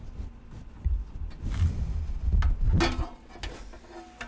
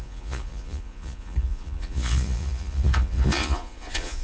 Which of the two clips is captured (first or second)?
first